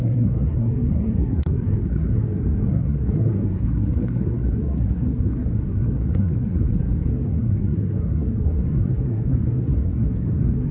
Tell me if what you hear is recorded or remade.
remade